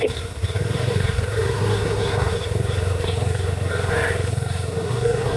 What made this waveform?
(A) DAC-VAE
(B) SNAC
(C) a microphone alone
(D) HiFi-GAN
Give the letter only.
B